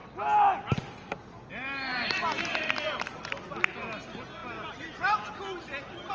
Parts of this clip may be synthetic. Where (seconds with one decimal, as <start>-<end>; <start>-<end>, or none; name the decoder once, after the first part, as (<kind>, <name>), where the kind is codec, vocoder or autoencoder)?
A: none

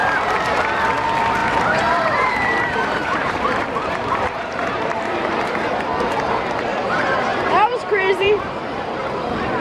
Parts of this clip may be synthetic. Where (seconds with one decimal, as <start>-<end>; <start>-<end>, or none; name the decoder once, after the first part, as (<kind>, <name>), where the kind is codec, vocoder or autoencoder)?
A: 1.4-5.4 (vocoder, BigVGAN v2); 6.7-8.9

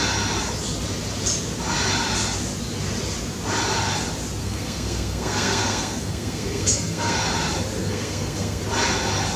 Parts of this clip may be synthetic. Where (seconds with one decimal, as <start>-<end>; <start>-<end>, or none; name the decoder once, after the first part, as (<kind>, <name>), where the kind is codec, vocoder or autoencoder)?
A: 4.4-7.2 (codec, SNAC); 7.8-8.6

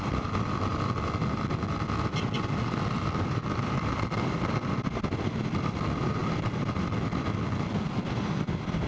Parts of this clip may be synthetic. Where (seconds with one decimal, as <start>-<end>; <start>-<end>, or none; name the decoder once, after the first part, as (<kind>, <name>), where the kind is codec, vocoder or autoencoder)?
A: 0.0-0.7 (vocoder, BigVGAN v2); 3.0-6.2

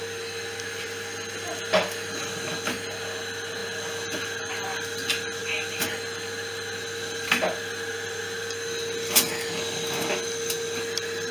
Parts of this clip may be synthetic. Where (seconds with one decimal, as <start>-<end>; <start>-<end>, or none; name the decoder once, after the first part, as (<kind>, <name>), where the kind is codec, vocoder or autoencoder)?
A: none

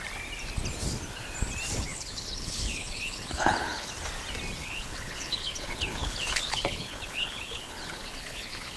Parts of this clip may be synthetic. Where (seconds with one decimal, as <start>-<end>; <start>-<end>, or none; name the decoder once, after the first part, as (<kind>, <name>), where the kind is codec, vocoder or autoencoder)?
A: 1.9-3.9 (codec, HILCodec); 4.6-8.8